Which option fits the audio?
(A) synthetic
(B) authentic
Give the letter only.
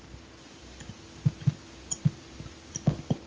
B